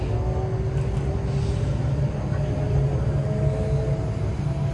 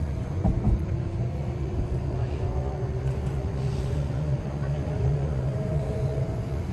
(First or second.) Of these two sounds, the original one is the first